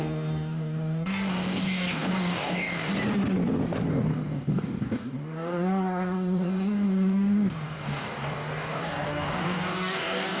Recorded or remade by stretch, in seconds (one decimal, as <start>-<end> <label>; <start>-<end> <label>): 0.0-2.9 remade; 2.9-3.9 recorded; 3.9-10.4 remade